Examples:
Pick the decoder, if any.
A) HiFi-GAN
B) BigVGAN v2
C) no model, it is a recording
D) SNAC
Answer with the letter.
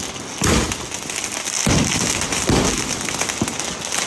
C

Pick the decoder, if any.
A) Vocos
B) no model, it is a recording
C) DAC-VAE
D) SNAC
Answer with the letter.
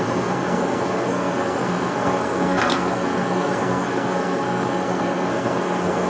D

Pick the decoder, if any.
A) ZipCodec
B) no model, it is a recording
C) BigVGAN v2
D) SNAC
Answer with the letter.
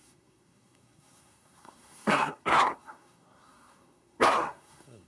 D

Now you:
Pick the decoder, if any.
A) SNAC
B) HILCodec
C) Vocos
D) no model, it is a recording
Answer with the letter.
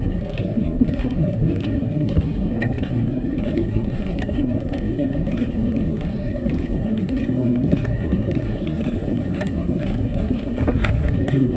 A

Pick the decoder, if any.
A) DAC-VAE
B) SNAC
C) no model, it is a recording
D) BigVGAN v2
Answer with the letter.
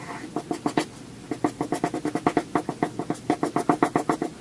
C